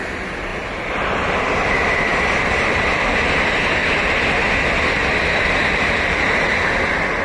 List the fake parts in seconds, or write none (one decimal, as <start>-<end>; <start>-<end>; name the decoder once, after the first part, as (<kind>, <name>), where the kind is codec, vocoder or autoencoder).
none